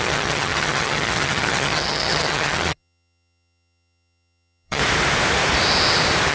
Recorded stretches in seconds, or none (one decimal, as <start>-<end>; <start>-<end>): 4.8-6.3